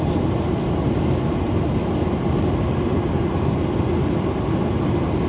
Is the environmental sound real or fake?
real